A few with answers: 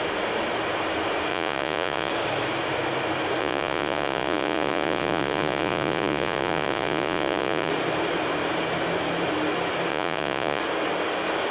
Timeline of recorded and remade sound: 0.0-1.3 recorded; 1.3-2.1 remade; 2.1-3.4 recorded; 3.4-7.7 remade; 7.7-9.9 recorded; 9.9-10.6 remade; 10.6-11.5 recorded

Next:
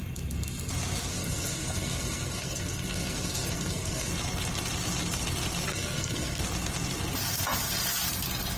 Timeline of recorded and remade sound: 0.0-1.1 recorded; 1.1-4.1 remade; 4.1-5.7 recorded; 5.7-6.4 remade; 6.4-8.6 recorded

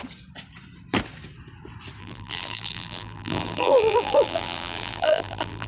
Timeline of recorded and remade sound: 0.0-2.0 recorded; 2.0-5.7 remade

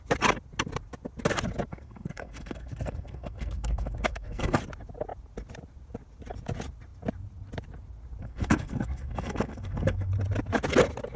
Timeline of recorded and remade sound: 0.0-1.7 recorded; 1.7-4.6 remade; 4.6-8.2 recorded; 8.2-10.1 remade; 10.1-11.2 recorded

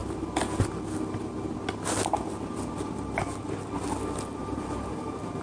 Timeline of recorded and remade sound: 0.0-4.4 recorded; 4.4-5.4 remade

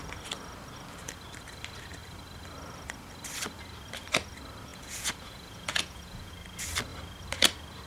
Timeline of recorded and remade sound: 0.0-4.7 recorded; 4.7-6.3 remade; 6.3-7.9 recorded

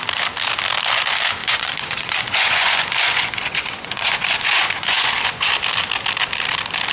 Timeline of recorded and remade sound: 0.0-1.4 recorded; 1.4-5.5 remade; 5.5-6.9 recorded